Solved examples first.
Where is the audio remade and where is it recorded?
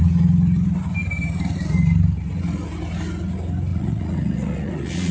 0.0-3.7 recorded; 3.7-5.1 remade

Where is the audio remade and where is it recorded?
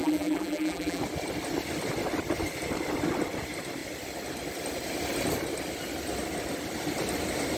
0.0-1.0 remade; 1.0-7.6 recorded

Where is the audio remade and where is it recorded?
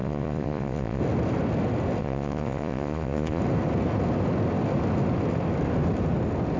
0.0-1.0 remade; 1.0-2.0 recorded; 2.0-3.4 remade; 3.4-6.6 recorded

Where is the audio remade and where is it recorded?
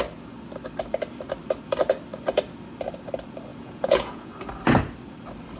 0.0-3.5 recorded; 3.5-4.3 remade; 4.3-5.6 recorded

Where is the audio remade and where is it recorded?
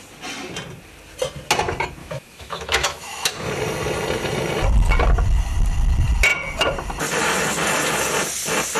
0.0-2.0 recorded; 2.0-3.3 remade; 3.3-8.8 recorded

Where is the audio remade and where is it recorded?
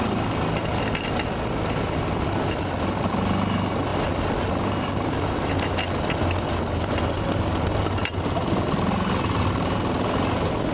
0.0-10.7 recorded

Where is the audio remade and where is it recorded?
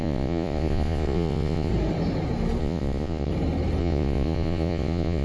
0.0-1.7 remade; 1.7-2.6 recorded; 2.6-3.3 remade; 3.3-3.8 recorded; 3.8-5.2 remade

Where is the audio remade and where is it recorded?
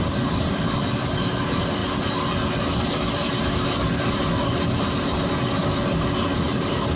0.0-7.0 recorded